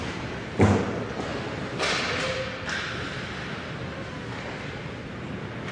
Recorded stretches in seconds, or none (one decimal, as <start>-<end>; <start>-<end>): 0.0-5.7